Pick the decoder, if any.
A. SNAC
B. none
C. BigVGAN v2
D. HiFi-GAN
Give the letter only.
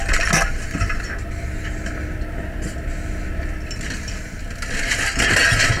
B